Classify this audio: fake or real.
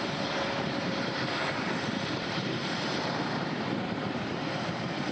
fake